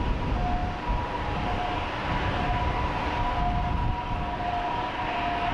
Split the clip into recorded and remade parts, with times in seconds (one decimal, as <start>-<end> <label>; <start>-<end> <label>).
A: 0.0-5.5 recorded